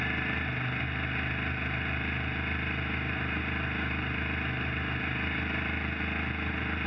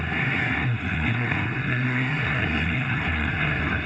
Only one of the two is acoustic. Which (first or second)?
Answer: first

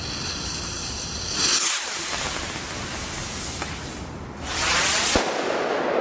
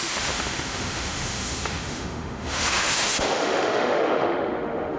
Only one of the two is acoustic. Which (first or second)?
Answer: first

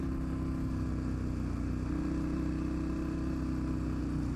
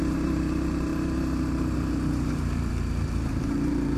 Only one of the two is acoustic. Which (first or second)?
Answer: first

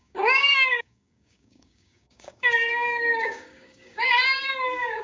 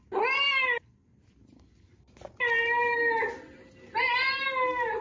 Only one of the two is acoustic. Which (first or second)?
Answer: second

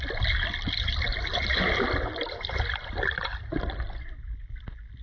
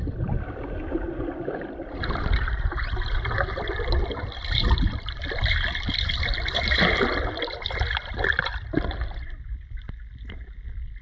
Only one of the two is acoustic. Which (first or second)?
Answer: first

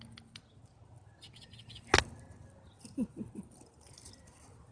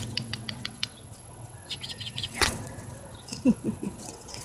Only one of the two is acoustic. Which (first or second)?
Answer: first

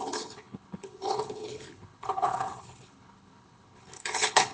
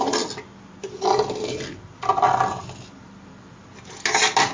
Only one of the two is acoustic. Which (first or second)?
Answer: second